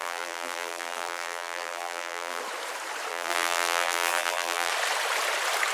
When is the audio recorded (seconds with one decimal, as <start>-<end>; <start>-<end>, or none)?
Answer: 2.4-3.1; 4.7-5.7